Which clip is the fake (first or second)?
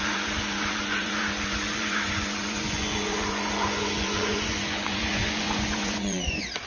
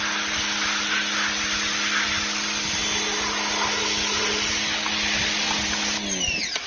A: first